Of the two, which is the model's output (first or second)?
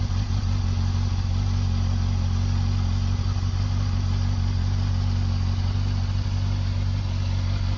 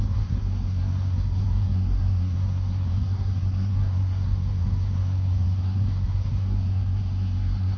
second